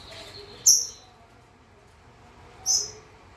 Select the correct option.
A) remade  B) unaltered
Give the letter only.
B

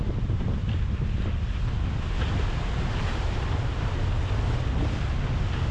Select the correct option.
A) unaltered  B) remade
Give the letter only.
A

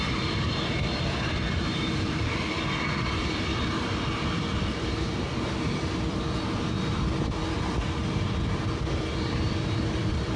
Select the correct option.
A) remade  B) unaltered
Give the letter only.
A